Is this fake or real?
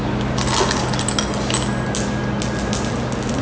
real